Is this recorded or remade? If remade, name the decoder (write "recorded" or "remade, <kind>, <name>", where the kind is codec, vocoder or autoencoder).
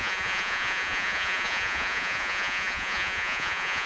remade, vocoder, Vocos